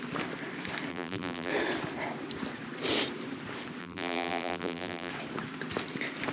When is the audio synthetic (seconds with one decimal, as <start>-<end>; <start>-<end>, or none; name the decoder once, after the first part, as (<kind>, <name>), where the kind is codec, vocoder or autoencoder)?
0.9-1.5 (vocoder, BigVGAN v2); 3.8-5.1